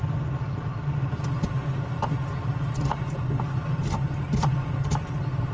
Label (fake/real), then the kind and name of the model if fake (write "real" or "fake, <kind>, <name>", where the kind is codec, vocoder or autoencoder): real